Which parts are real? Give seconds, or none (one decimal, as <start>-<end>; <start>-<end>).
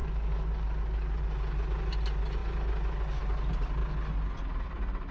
1.2-5.1